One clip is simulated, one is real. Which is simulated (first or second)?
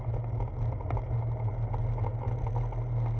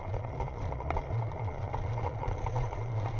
second